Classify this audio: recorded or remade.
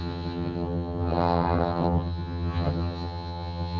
remade